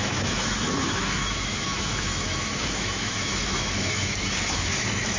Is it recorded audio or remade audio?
remade